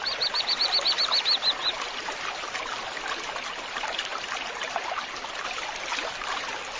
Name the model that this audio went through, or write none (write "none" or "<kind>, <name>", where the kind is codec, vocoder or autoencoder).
none